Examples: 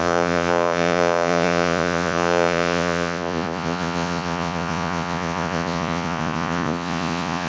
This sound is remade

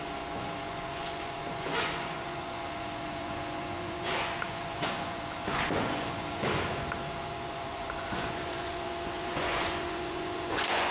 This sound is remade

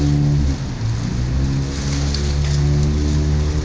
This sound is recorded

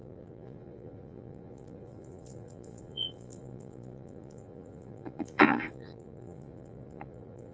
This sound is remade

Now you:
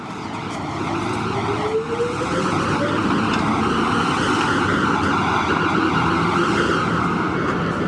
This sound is recorded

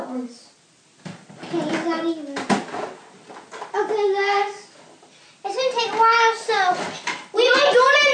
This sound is recorded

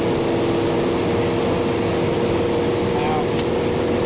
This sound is recorded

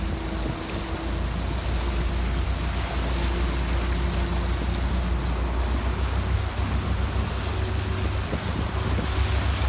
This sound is recorded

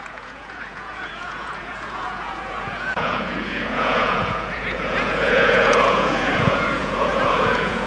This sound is remade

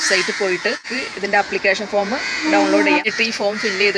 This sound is remade